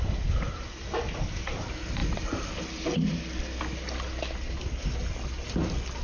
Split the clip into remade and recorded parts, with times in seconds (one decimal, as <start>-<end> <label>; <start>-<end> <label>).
0.0-6.0 recorded